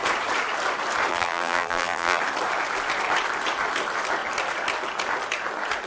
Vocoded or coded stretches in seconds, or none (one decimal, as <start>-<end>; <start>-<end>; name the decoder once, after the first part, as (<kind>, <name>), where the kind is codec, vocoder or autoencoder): 1.1-2.2 (vocoder, BigVGAN v2)